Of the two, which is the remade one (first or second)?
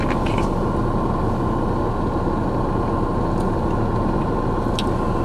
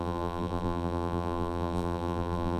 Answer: second